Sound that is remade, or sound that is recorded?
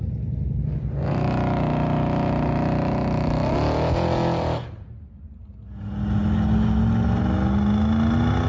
recorded